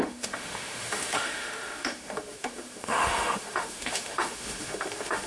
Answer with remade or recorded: remade